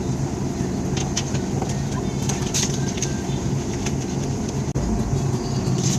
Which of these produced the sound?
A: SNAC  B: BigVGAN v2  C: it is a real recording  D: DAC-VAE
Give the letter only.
C